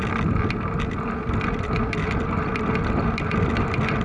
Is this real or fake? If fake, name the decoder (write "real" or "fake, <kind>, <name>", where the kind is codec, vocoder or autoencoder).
real